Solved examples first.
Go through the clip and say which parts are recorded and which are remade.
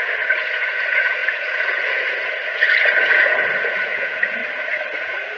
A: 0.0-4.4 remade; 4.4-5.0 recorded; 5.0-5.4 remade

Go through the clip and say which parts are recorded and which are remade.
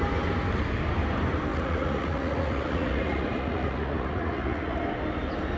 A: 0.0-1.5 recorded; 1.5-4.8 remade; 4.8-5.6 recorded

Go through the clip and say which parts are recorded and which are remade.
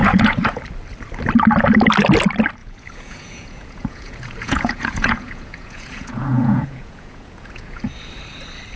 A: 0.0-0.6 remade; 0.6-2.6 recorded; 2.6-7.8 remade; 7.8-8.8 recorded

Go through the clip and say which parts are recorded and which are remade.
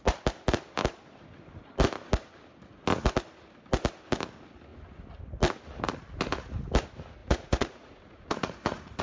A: 0.0-7.2 recorded; 7.2-9.0 remade